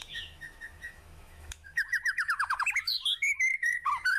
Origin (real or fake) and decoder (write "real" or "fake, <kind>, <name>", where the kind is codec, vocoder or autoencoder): fake, autoencoder, DAC-VAE